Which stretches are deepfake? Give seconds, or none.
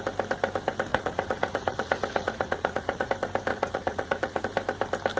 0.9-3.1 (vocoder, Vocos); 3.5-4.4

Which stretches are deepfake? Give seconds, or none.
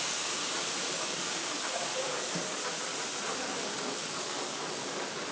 0.0-0.4 (codec, DAC); 0.9-2.9; 3.4-5.3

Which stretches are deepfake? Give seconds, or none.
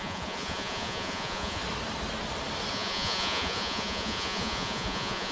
0.0-1.6 (vocoder, Vocos); 2.7-5.3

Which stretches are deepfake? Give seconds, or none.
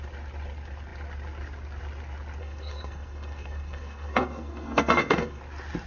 2.4-5.4 (codec, SNAC)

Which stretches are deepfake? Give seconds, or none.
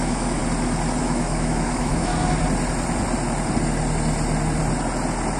0.0-0.4 (autoencoder, DAC-VAE); 1.0-2.1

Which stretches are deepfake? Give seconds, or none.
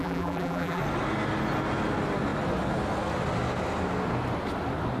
0.0-0.8 (vocoder, BigVGAN v2)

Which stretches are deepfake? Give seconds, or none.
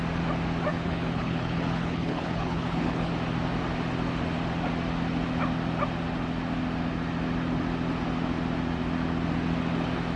0.7-3.1 (codec, HILCodec)